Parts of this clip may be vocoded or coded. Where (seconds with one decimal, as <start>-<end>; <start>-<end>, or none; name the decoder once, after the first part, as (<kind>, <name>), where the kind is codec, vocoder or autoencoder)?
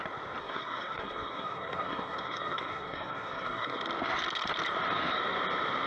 0.4-3.8 (codec, SNAC)